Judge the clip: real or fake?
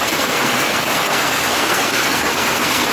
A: fake